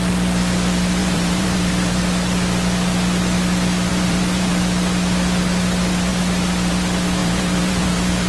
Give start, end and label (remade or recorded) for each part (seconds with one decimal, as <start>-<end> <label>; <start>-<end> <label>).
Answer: 0.0-1.0 recorded; 1.0-2.0 remade; 2.0-3.9 recorded; 3.9-4.5 remade; 4.5-7.2 recorded; 7.2-8.3 remade